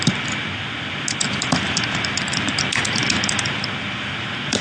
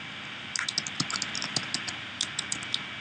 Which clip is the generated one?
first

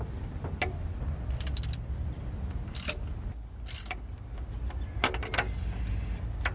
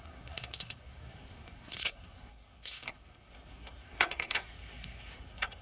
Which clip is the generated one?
second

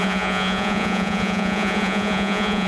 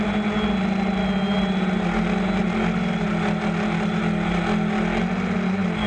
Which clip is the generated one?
first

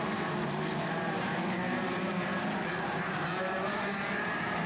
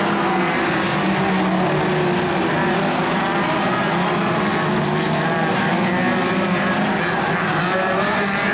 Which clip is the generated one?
first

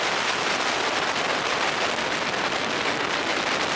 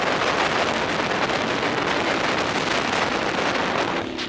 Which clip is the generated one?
first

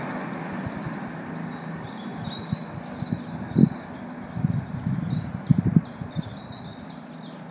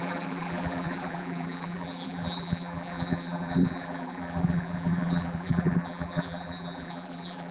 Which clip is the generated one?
second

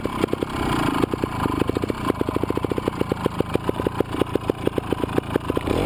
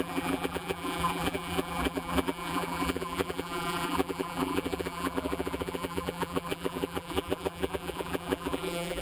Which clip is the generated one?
second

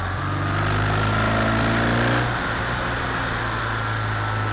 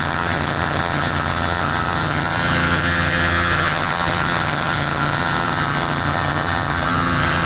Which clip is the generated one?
second